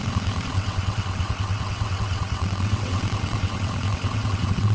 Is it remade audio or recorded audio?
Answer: remade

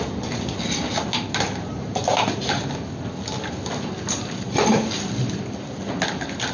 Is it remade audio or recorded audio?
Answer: recorded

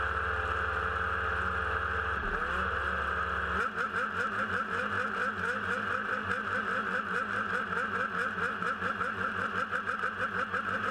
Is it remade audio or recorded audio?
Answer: recorded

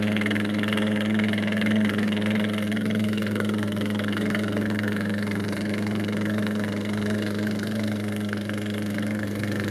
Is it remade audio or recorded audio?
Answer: remade